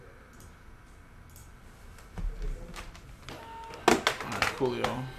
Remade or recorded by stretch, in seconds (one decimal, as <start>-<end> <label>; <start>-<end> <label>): 0.0-5.2 recorded